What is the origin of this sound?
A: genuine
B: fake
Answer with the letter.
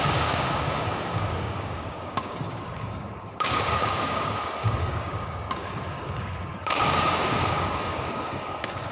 B